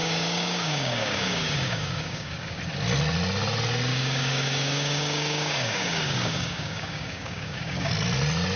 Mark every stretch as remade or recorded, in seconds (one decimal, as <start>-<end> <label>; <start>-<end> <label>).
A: 0.0-2.6 remade; 2.6-3.9 recorded; 3.9-7.9 remade; 7.9-8.6 recorded